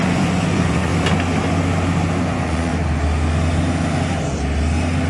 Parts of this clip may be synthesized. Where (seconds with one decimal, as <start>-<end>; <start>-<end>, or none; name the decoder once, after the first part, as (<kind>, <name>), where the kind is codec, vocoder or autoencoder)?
0.0-0.9 (vocoder, Vocos); 2.2-2.7